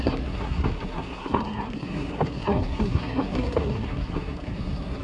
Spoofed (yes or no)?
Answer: yes